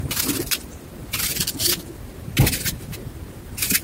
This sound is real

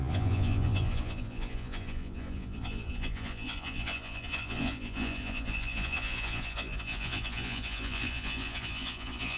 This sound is fake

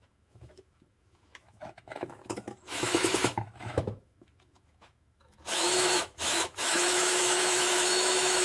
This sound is fake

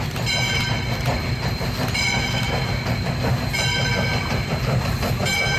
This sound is real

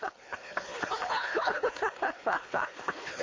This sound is fake